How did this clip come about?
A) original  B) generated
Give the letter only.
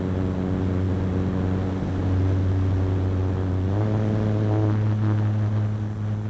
A